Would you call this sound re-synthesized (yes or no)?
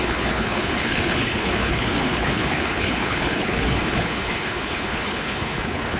yes